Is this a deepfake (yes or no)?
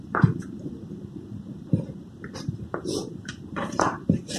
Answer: yes